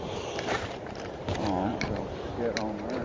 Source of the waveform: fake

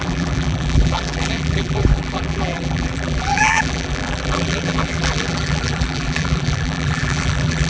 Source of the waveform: fake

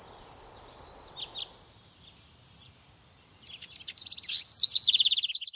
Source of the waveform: real